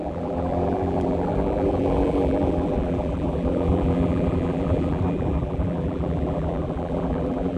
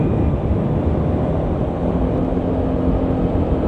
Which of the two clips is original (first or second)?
second